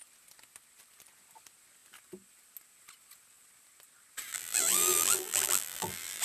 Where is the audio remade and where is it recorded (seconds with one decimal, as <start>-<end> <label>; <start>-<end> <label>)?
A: 0.0-4.3 recorded; 4.3-6.2 remade